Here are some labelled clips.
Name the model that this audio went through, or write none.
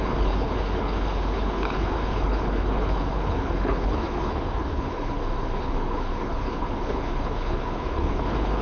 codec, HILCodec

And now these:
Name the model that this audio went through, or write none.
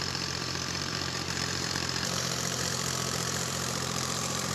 vocoder, BigVGAN v2